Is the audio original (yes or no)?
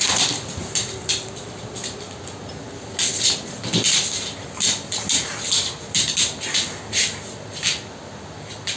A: yes